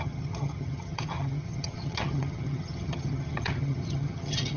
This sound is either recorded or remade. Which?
remade